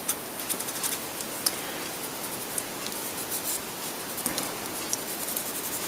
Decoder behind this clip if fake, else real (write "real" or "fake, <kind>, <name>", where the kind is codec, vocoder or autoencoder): real